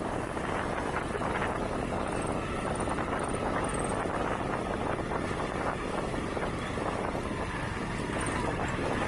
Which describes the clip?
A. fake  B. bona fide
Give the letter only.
B